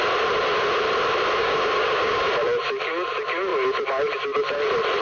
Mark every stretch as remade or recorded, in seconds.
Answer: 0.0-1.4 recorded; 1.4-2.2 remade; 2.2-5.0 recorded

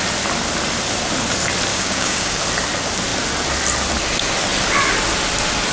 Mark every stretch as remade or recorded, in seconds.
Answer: 0.0-1.7 recorded; 1.7-2.4 remade; 2.4-5.7 recorded

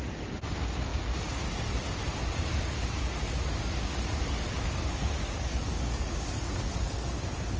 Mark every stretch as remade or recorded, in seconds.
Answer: 0.0-2.5 recorded; 2.5-7.1 remade; 7.1-7.6 recorded